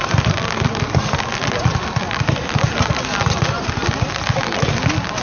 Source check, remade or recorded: recorded